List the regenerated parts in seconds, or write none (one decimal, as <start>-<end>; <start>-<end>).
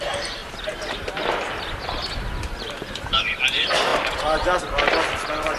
0.4-3.4